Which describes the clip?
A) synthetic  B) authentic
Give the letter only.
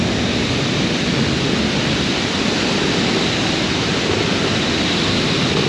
B